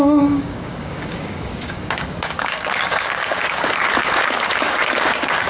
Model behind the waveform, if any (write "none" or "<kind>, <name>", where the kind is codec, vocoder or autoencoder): codec, DAC